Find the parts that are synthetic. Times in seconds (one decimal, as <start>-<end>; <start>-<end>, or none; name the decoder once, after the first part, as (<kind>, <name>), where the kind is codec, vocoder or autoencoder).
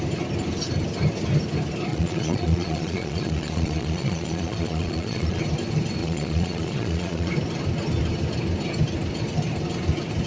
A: 1.9-5.4 (vocoder, Vocos); 6.0-7.3